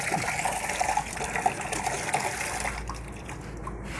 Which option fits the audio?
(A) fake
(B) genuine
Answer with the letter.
B